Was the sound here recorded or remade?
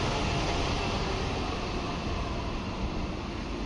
recorded